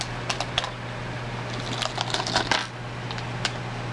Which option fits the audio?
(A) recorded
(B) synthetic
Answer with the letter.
A